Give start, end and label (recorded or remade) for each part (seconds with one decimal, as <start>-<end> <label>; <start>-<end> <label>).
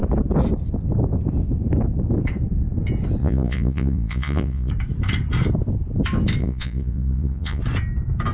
0.0-3.2 recorded; 3.2-4.7 remade; 4.7-6.4 recorded; 6.4-7.6 remade; 7.6-8.3 recorded